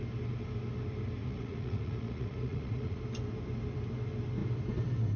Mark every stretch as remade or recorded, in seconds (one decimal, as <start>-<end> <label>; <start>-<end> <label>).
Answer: 0.0-1.2 recorded; 1.2-3.0 remade; 3.0-5.2 recorded